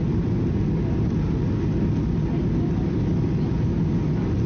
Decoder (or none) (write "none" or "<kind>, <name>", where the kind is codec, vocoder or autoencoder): none